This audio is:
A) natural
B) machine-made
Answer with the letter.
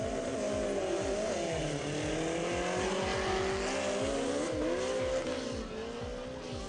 A